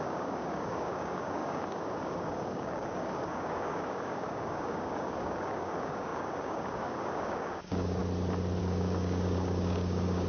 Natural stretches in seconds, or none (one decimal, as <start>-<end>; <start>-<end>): 8.0-8.6